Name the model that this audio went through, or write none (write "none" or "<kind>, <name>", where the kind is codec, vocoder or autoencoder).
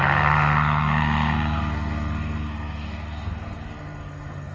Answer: codec, SNAC